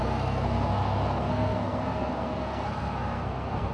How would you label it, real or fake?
fake